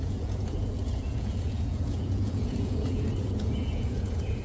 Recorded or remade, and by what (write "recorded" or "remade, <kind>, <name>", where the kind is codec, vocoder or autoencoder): remade, vocoder, Vocos